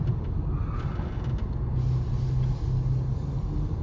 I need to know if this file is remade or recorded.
recorded